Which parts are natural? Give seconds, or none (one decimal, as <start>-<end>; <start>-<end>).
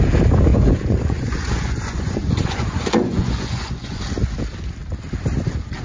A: 0.0-0.5; 4.0-5.8